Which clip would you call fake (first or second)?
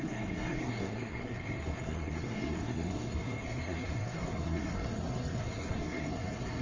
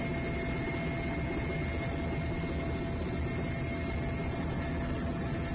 first